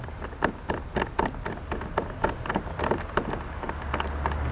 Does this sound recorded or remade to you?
recorded